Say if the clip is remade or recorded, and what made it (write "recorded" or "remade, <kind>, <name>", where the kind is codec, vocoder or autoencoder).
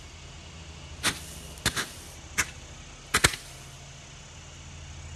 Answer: recorded